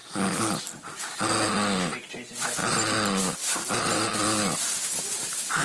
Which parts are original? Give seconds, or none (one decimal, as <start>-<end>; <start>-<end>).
0.0-5.6